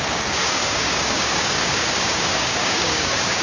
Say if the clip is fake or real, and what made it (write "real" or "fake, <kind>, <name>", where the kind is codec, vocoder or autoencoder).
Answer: fake, codec, DAC